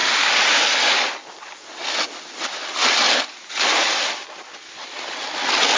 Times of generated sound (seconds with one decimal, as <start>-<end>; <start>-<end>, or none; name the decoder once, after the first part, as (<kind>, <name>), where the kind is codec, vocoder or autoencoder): none